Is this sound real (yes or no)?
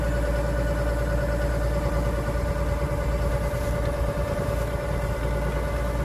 yes